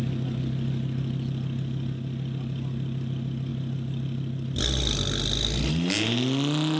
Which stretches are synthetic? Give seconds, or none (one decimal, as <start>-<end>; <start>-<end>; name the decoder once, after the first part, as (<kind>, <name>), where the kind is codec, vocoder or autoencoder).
none